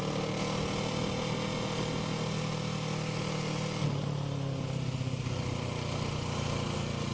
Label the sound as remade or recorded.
recorded